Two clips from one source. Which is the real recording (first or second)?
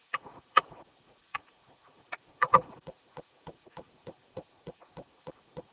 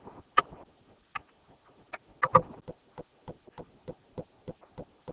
second